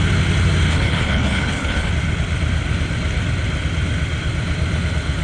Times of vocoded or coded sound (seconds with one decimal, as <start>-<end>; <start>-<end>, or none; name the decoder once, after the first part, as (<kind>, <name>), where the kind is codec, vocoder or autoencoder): 0.7-1.9 (codec, HILCodec)